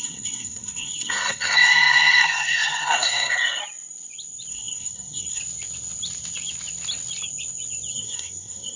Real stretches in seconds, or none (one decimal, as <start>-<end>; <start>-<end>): 3.6-4.5; 5.4-7.9